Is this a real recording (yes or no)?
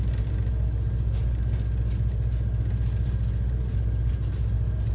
yes